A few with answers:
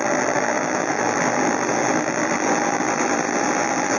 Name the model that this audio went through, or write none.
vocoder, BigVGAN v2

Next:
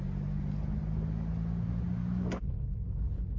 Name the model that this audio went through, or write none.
none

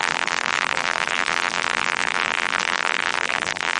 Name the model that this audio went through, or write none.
vocoder, BigVGAN v2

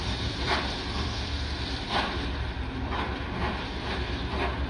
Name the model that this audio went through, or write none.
vocoder, BigVGAN v2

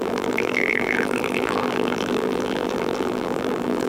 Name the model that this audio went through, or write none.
vocoder, BigVGAN v2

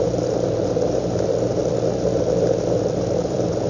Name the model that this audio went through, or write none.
vocoder, BigVGAN v2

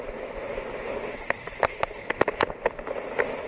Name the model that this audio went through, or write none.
none